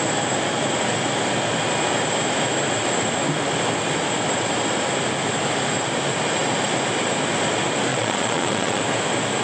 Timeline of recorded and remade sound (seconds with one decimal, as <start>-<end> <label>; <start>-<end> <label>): 0.0-7.9 recorded; 7.9-8.8 remade; 8.8-9.4 recorded